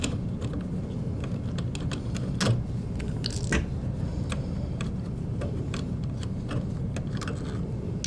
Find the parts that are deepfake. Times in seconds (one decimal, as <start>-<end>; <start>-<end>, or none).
4.1-6.3